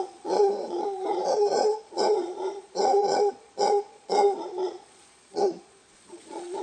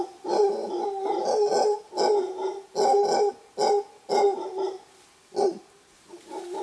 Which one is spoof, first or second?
first